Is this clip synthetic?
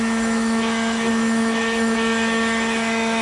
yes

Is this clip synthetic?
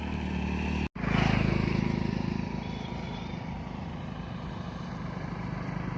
no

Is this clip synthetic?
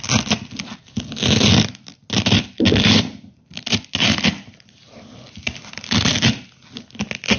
no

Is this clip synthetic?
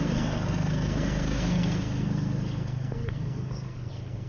yes